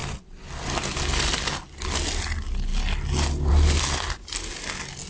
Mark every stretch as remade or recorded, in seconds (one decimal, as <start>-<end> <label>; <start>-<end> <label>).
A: 0.0-5.1 recorded